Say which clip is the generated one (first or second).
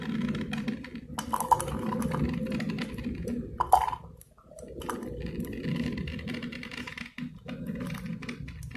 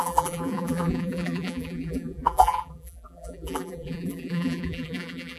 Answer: second